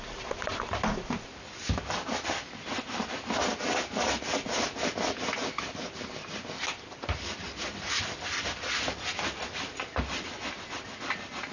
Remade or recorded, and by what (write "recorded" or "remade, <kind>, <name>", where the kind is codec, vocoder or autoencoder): recorded